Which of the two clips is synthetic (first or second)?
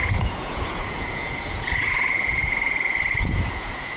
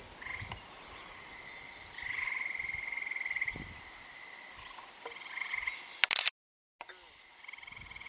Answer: first